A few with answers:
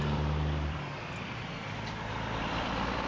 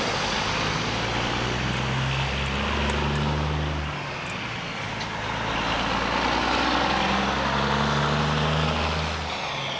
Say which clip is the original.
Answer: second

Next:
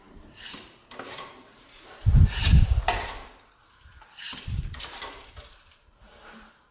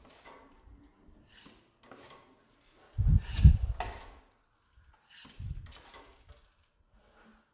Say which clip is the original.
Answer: second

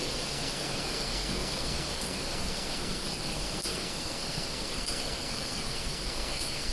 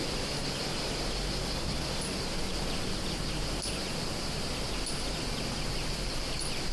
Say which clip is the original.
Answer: second